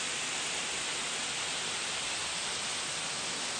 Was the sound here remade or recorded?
recorded